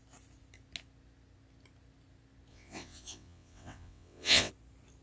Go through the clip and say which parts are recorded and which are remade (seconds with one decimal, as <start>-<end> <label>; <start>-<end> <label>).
0.0-2.5 recorded; 2.5-4.5 remade; 4.5-5.0 recorded